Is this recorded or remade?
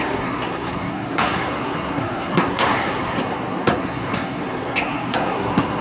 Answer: remade